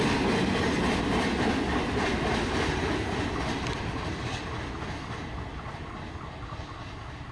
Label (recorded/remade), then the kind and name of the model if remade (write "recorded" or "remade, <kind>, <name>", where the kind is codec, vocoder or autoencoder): recorded